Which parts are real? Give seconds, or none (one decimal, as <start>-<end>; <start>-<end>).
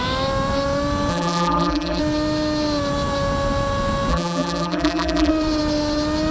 0.0-1.1; 2.0-4.1; 5.3-6.3